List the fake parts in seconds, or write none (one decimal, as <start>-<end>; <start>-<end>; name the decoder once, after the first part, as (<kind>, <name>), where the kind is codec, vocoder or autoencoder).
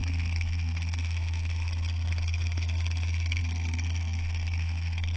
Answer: 0.0-5.2 (codec, SNAC)